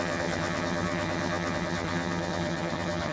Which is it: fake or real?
fake